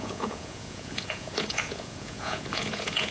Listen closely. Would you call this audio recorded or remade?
remade